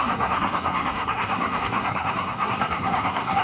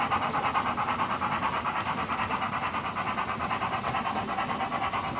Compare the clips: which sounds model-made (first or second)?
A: first